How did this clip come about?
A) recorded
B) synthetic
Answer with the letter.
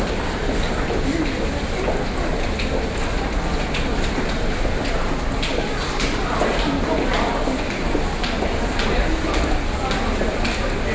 A